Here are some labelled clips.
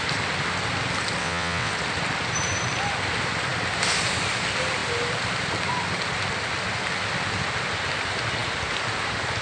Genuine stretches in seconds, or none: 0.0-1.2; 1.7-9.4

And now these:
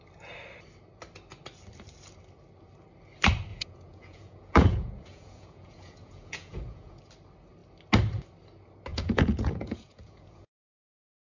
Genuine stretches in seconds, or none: 0.0-3.5; 7.0-8.9

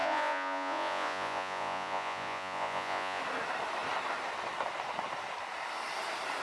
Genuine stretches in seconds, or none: 3.2-6.4

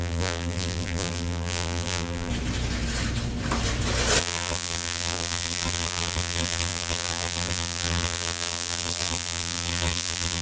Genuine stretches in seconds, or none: 2.3-4.2